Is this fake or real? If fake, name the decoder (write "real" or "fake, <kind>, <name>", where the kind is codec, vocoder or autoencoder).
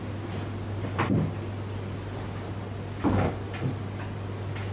real